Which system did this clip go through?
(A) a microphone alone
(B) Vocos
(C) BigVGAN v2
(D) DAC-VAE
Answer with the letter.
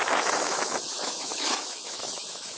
D